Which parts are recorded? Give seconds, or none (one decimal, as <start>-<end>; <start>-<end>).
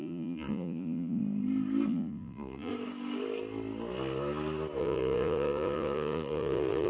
1.2-1.9; 2.7-4.8